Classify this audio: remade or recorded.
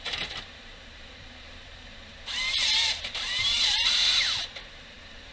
remade